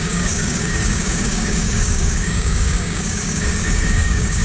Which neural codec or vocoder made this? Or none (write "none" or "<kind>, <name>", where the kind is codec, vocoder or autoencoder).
codec, DAC